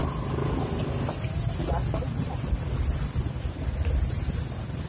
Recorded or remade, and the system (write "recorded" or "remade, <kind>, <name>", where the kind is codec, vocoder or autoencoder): recorded